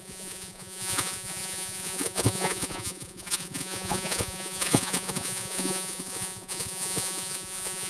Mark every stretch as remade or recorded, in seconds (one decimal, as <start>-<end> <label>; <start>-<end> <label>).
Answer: 0.0-7.9 remade